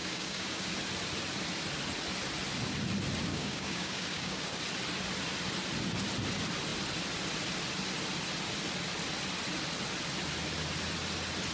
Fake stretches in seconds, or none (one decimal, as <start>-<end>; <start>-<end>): 0.0-0.7; 3.3-4.6